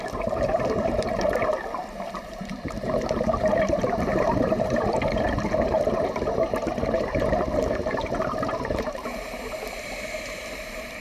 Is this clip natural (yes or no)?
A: no